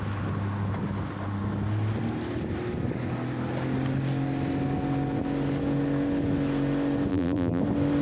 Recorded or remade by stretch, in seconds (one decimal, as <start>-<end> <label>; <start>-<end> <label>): 0.0-7.1 recorded; 7.1-7.6 remade; 7.6-8.0 recorded